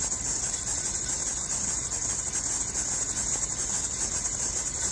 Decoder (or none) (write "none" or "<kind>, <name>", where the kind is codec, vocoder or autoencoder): none